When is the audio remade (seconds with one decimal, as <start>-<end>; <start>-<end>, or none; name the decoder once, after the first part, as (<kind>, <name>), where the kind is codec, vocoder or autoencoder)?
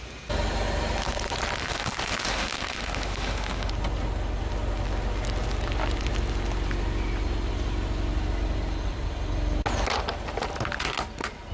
1.6-3.7 (autoencoder, DAC-VAE)